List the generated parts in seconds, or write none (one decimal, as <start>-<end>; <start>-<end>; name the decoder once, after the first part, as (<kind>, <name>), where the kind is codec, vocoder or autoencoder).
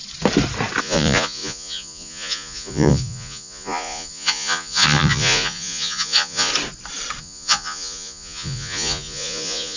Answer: 0.8-6.5 (vocoder, Vocos); 7.2-9.8